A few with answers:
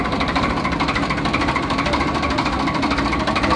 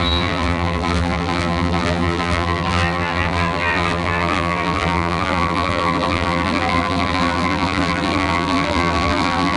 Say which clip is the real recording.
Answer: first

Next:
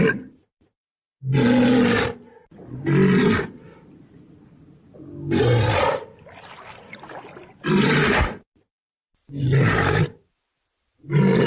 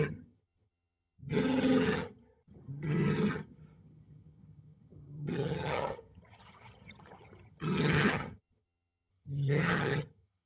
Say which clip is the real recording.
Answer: first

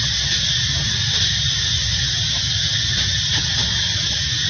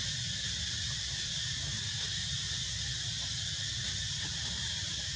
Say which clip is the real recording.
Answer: first